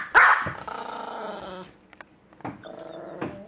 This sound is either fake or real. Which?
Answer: real